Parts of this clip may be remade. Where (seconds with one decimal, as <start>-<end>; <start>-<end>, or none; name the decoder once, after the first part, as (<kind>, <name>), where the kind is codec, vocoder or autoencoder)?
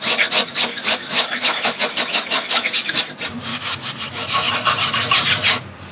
0.7-3.0 (autoencoder, DAC-VAE); 3.5-4.5